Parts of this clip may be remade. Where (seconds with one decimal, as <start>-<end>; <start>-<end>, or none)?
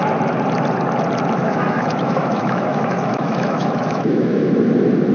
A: 1.4-4.5